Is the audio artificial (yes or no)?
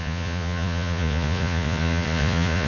yes